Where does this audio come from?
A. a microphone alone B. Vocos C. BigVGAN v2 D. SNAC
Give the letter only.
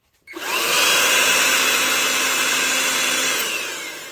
A